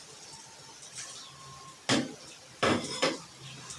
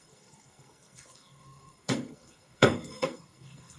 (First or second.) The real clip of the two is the first